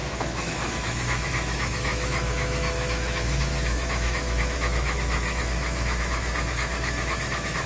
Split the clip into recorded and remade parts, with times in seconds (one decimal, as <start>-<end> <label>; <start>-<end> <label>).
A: 0.0-7.7 remade